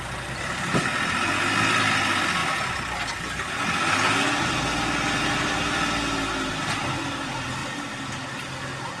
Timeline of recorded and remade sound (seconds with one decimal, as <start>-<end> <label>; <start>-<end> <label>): 0.0-9.0 recorded